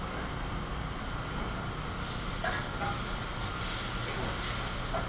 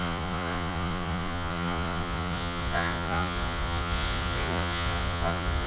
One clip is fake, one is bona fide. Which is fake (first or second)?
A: second